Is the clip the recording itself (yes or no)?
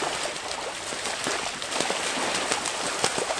yes